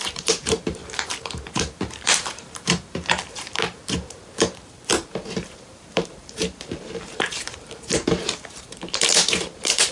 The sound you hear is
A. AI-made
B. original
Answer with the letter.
A